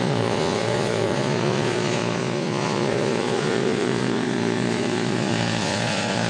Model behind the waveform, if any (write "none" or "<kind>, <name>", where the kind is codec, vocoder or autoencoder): vocoder, Vocos